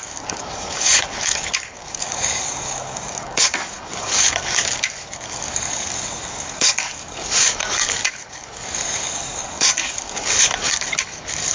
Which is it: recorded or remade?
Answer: remade